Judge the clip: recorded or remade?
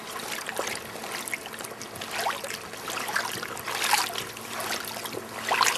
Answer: recorded